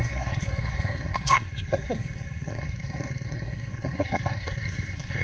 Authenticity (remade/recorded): remade